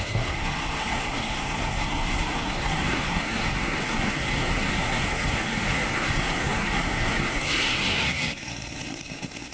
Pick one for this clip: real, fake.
fake